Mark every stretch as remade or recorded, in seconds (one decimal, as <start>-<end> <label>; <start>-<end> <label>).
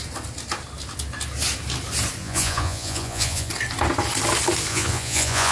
0.0-2.2 recorded; 2.2-3.5 remade; 3.5-4.7 recorded; 4.7-5.5 remade